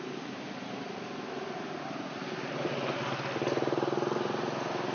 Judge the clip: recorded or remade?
recorded